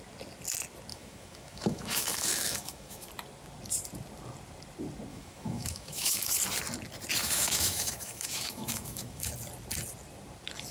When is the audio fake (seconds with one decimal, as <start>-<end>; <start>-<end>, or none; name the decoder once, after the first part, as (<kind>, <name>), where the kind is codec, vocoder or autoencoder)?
0.9-3.1 (autoencoder, DAC-VAE); 5.1-6.3; 7.2-9.3